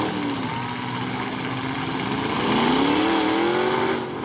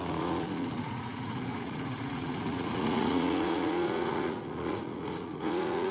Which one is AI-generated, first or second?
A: second